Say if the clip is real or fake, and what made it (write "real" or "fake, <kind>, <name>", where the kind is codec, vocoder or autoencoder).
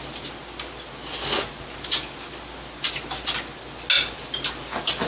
real